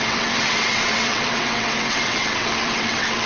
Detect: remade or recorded remade